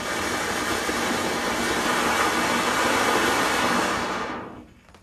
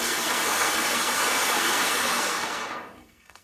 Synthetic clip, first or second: second